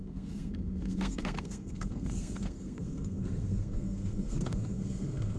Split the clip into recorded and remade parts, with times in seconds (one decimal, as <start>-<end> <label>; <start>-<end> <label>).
0.0-5.4 remade